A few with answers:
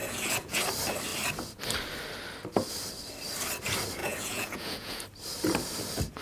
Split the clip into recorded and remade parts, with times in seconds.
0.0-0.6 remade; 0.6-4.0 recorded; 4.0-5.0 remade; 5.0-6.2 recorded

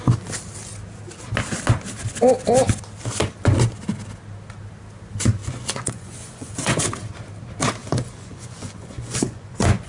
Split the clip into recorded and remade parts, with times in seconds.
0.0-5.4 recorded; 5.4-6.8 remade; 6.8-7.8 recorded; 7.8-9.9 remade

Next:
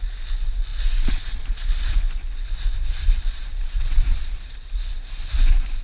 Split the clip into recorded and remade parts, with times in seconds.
0.0-3.0 recorded; 3.0-4.5 remade; 4.5-5.8 recorded

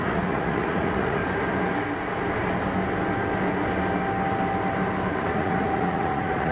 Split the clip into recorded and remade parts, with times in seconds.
0.0-1.2 remade; 1.2-5.1 recorded; 5.1-6.5 remade

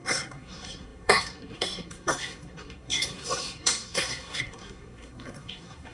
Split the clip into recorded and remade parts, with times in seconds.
0.0-5.9 remade